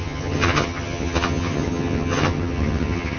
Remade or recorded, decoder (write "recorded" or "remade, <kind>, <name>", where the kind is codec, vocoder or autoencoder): remade, vocoder, HiFi-GAN